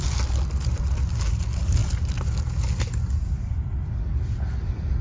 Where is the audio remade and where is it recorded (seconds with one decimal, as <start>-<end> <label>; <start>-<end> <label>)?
0.0-5.0 recorded